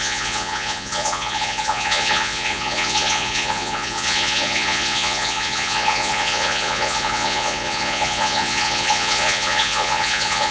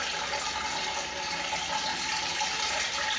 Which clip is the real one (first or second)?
second